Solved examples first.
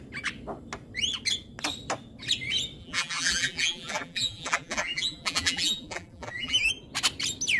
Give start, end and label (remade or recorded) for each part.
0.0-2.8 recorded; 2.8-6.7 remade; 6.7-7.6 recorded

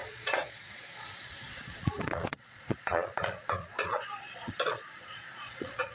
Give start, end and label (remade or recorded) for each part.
0.0-5.9 remade

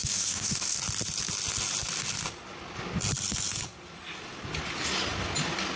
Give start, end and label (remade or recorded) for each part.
0.0-0.8 remade; 0.8-5.8 recorded

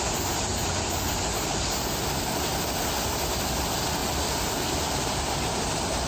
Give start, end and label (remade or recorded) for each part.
0.0-0.5 recorded; 0.5-2.4 remade; 2.4-4.0 recorded; 4.0-5.2 remade; 5.2-6.1 recorded

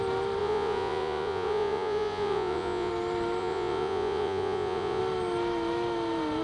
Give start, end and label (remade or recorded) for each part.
0.0-0.4 recorded; 0.4-2.9 remade; 2.9-3.4 recorded; 3.4-5.0 remade; 5.0-6.4 recorded